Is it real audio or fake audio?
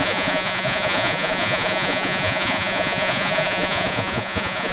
fake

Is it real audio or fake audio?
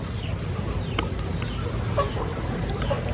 real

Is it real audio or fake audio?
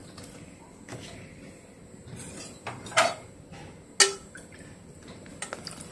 real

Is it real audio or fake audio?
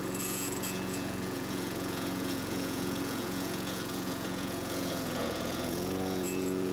fake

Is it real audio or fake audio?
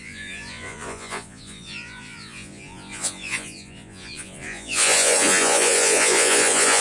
fake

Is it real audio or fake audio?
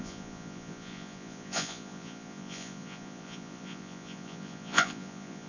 fake